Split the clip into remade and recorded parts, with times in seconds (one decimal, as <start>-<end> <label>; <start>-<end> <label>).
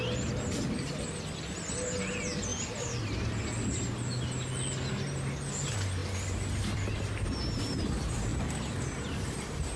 0.0-9.8 recorded